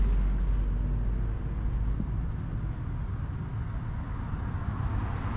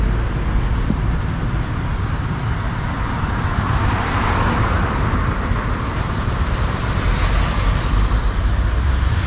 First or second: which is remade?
second